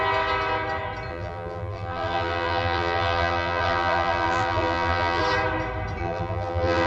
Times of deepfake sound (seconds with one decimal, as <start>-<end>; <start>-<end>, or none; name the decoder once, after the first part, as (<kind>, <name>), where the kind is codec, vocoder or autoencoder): 1.1-5.2 (vocoder, BigVGAN v2); 6.0-6.9